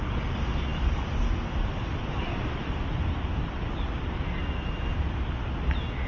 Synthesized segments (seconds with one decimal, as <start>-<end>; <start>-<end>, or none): none